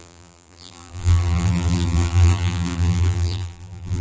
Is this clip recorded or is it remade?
remade